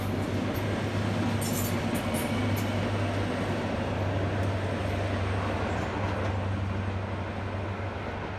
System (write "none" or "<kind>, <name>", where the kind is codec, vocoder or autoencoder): none